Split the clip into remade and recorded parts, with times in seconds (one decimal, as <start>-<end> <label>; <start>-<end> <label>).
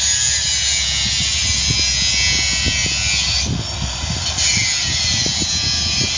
0.0-6.2 recorded